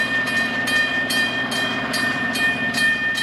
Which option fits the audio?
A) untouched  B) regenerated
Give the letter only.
A